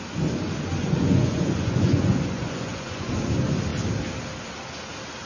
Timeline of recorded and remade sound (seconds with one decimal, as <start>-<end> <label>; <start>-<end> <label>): 0.0-0.8 recorded; 0.8-3.1 remade; 3.1-5.3 recorded